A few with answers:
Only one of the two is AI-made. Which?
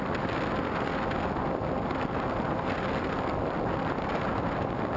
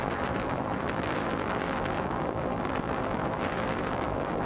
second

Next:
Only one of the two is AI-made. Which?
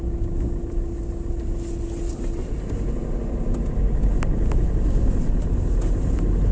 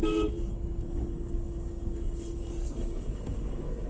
second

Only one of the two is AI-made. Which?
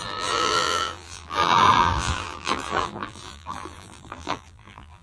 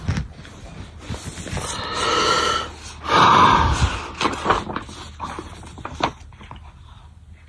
first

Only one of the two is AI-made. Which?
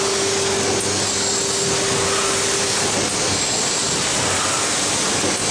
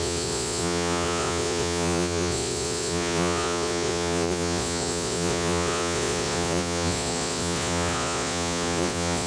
second